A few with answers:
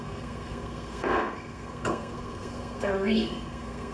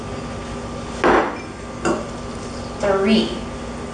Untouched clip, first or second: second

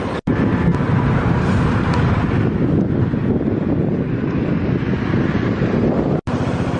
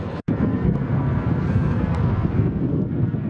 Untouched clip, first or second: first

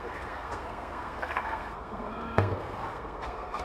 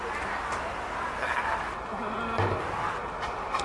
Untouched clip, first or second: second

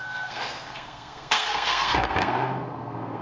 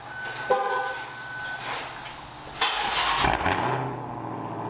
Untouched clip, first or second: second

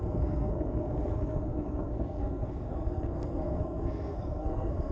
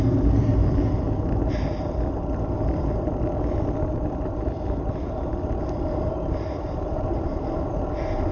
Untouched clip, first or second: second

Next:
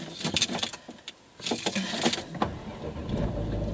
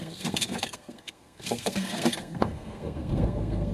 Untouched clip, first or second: first